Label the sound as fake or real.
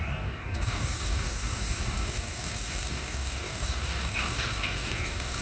fake